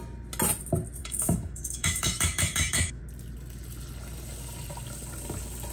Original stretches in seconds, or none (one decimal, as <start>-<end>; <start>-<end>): 0.0-1.0; 3.0-5.7